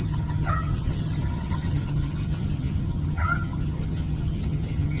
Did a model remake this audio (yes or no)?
yes